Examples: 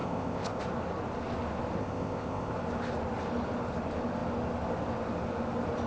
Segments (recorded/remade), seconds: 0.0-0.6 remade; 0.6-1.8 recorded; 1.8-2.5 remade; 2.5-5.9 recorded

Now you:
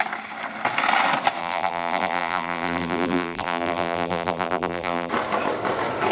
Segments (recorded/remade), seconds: 0.0-1.4 recorded; 1.4-5.1 remade; 5.1-6.1 recorded

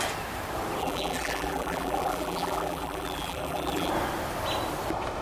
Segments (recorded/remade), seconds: 0.0-0.8 recorded; 0.8-3.9 remade; 3.9-5.2 recorded

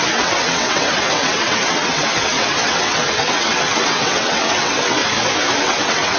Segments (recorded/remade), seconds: 0.0-5.0 remade; 5.0-5.6 recorded; 5.6-6.2 remade

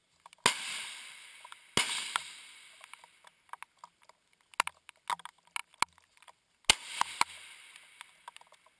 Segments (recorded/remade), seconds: 0.0-8.8 recorded

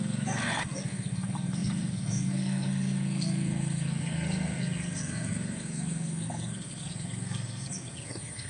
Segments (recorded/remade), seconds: 0.0-8.5 remade

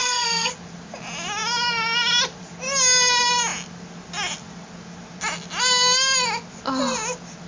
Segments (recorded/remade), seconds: 0.0-0.5 remade; 0.5-7.5 recorded